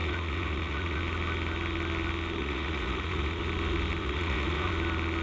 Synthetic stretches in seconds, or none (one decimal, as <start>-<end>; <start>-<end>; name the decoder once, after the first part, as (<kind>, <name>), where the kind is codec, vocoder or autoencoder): 0.0-1.0 (vocoder, Vocos); 2.4-3.4; 4.0-4.7